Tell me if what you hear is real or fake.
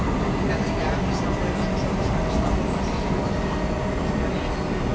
real